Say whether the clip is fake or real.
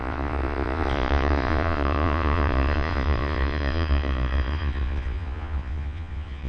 fake